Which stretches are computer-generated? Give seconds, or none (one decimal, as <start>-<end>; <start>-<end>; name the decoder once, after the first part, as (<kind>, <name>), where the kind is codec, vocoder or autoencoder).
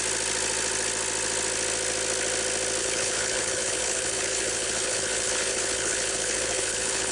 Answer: 2.8-7.1 (codec, HILCodec)